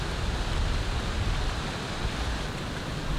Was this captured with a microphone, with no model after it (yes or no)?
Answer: yes